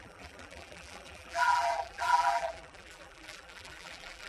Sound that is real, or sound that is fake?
fake